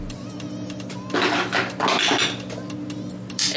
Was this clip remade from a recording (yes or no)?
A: no